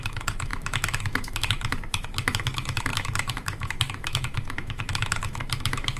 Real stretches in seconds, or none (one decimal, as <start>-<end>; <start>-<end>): none